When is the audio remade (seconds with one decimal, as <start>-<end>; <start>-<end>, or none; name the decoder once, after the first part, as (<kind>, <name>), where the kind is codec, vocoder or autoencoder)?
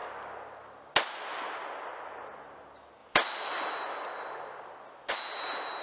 3.0-5.1 (vocoder, BigVGAN v2)